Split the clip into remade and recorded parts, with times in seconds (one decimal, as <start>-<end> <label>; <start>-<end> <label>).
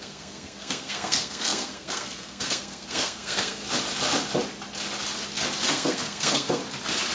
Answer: 0.0-3.6 remade; 3.6-5.7 recorded; 5.7-6.6 remade; 6.6-7.1 recorded